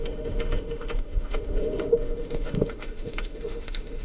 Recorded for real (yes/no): no